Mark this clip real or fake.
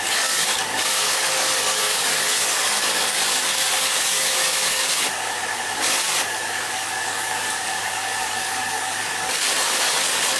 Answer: fake